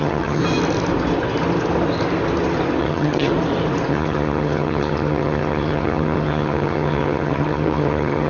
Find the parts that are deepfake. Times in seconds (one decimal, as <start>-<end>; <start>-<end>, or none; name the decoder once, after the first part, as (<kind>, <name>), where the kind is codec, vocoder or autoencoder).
0.0-0.4 (vocoder, HiFi-GAN); 2.8-3.3; 3.9-8.3